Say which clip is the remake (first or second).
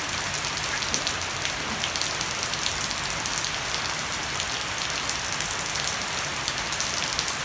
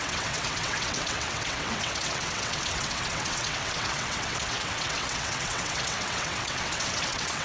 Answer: second